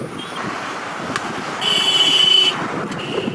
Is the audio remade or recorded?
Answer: recorded